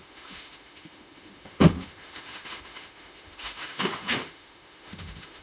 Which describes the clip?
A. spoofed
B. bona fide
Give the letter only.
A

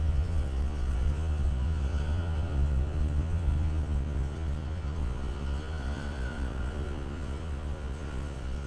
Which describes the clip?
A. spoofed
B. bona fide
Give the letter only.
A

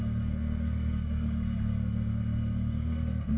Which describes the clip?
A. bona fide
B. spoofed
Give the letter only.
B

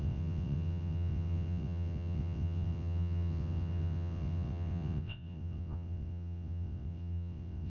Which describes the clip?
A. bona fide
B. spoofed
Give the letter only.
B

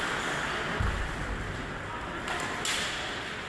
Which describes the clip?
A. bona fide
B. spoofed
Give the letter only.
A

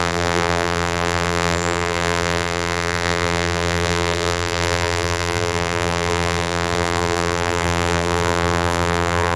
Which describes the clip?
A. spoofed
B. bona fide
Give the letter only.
A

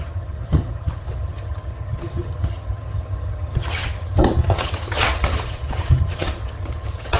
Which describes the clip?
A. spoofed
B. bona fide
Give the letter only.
A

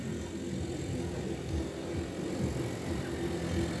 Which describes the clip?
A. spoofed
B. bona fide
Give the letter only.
B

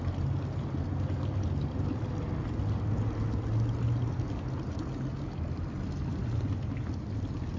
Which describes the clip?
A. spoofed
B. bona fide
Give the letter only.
B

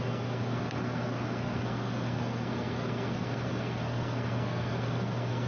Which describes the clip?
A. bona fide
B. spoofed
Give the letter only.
B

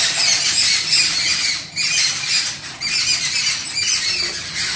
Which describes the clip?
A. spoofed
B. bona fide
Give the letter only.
B